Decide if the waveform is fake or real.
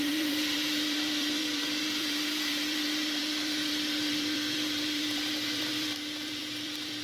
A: fake